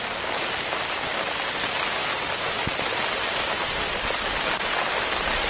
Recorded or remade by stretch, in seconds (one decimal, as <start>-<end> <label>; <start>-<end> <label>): 0.0-5.5 recorded